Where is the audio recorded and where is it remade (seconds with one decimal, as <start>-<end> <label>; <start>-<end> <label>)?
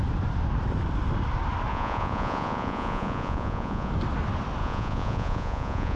0.0-1.7 recorded; 1.7-3.9 remade; 3.9-4.6 recorded; 4.6-6.0 remade